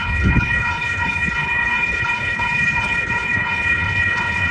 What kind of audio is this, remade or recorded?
remade